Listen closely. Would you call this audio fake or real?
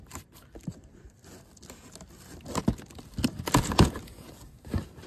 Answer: real